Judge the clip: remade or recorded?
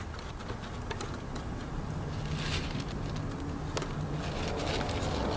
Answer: recorded